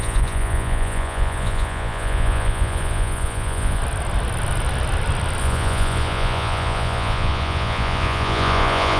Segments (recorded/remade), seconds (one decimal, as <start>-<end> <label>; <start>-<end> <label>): 0.0-3.8 remade; 3.8-5.4 recorded; 5.4-9.0 remade